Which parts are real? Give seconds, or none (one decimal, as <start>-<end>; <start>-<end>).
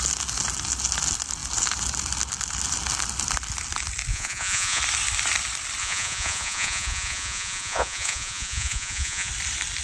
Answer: 0.0-4.1; 4.8-5.8; 9.3-9.8